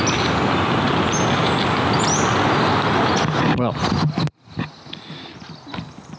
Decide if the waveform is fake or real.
real